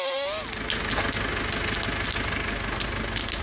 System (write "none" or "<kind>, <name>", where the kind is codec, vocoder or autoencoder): none